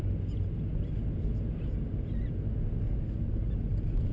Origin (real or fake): real